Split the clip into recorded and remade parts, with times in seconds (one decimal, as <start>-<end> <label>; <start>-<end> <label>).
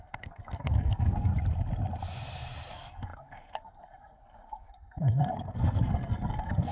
0.0-1.3 remade; 1.3-2.7 recorded; 2.7-6.7 remade